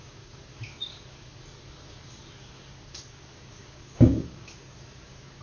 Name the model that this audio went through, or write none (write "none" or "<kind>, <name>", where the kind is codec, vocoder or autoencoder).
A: codec, DAC